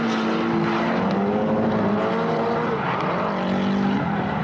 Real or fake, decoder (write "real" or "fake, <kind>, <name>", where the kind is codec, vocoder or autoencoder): real